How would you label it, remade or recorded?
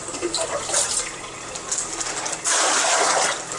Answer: recorded